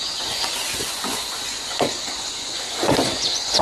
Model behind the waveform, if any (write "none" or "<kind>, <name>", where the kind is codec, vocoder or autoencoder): vocoder, Vocos